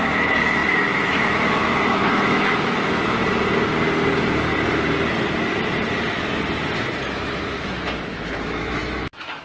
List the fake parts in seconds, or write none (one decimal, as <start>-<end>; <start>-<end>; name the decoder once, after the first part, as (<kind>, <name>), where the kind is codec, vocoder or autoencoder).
0.0-3.2 (autoencoder, DAC-VAE); 7.1-9.4